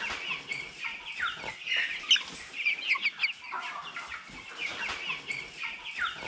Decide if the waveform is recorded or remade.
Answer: recorded